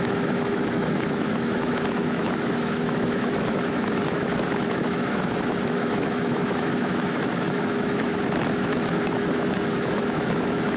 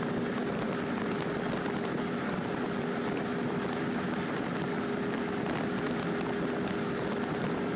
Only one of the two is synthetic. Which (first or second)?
first